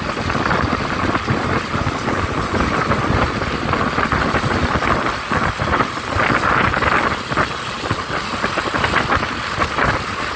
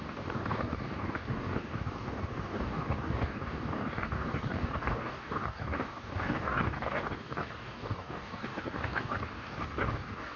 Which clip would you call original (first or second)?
first